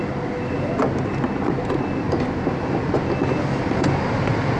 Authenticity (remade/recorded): recorded